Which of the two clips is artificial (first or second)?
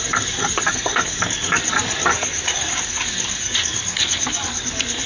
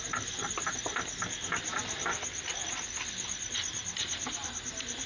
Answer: first